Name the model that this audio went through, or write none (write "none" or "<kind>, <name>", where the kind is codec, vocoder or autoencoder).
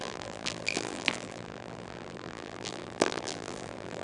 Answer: vocoder, BigVGAN v2